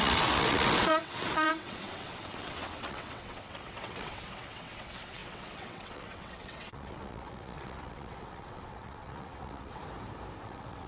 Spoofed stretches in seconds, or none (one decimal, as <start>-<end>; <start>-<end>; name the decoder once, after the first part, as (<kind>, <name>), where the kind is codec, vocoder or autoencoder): 0.0-9.8 (vocoder, WaveNeXt); 10.4-10.9